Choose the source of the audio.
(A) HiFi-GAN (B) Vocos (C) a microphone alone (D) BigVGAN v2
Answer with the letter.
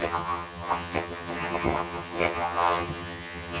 A